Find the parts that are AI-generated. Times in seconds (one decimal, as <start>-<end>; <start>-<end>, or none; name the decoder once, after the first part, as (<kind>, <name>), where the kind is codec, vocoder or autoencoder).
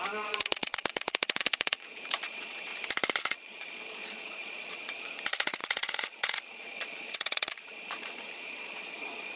0.0-2.7 (vocoder, Vocos); 3.2-9.4